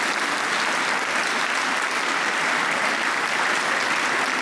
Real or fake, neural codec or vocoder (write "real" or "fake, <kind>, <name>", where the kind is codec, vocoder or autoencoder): real